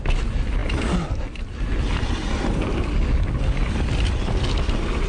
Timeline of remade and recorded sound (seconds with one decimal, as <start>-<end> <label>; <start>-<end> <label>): 0.0-5.1 recorded